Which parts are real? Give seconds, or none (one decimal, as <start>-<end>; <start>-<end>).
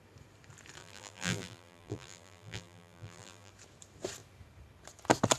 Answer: 0.0-0.8; 3.5-5.4